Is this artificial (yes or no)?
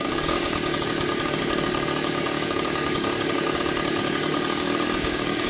yes